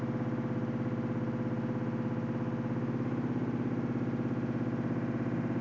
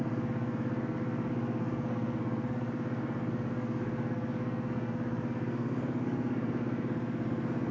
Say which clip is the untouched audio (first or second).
first